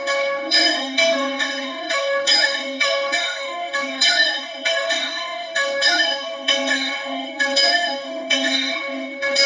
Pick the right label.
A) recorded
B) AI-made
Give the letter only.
B